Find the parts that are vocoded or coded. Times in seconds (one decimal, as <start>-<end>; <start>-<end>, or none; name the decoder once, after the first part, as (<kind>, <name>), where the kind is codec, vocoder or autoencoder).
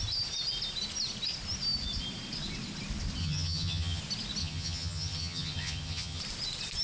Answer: 3.2-4.0 (vocoder, HiFi-GAN); 4.4-6.2